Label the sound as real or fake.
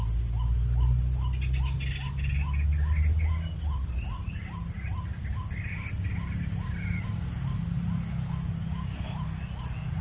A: real